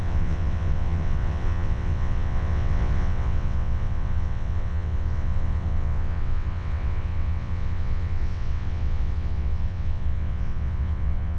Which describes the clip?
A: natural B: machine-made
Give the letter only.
B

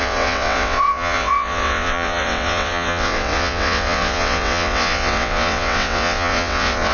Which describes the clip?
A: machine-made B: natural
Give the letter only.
A